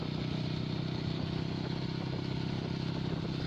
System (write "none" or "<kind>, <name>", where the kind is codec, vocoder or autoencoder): none